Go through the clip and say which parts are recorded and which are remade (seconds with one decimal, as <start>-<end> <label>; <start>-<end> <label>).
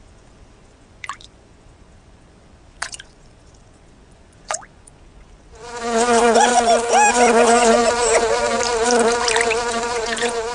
0.0-6.5 remade; 6.5-7.1 recorded; 7.1-7.8 remade; 7.8-9.6 recorded; 9.6-10.5 remade